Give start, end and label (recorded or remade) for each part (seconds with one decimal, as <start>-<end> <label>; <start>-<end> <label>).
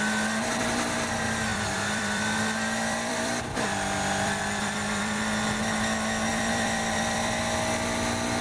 0.0-1.5 recorded; 1.5-5.3 remade; 5.3-6.3 recorded; 6.3-7.3 remade; 7.3-8.4 recorded